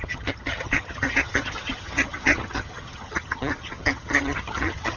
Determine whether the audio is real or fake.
fake